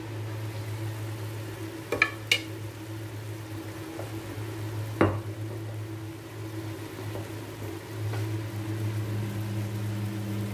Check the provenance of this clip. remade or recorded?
recorded